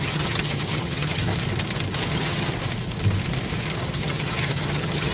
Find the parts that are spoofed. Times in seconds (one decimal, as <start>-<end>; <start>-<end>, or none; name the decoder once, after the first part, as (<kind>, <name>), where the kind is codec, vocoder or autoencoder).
0.0-1.3 (vocoder, HiFi-GAN); 2.1-2.5; 3.8-5.1